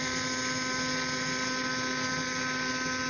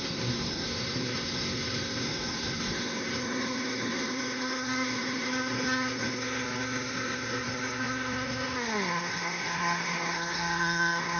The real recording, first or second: first